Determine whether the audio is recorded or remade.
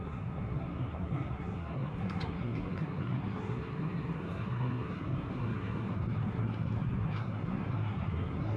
remade